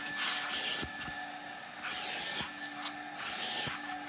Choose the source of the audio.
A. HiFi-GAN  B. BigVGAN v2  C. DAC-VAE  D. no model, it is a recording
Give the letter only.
D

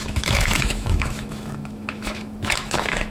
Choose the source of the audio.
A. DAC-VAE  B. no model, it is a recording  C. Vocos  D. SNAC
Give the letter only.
A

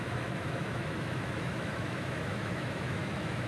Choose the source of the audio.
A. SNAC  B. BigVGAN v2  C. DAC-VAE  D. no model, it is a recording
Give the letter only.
C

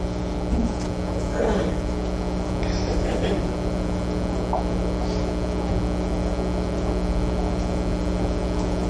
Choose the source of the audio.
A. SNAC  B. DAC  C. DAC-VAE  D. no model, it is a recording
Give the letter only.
D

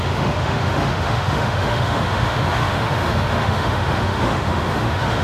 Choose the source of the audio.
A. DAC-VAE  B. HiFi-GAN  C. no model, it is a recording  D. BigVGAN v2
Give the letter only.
A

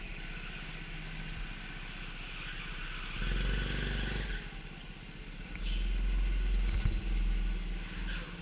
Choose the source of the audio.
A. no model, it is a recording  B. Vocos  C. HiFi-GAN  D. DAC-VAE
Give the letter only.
A